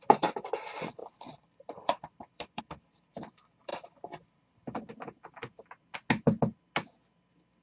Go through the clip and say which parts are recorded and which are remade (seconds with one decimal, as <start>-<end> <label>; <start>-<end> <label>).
0.0-1.0 recorded; 1.0-2.6 remade; 2.6-3.7 recorded; 3.7-4.9 remade; 4.9-7.6 recorded